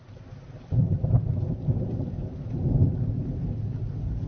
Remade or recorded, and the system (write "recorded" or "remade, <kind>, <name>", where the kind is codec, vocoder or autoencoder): recorded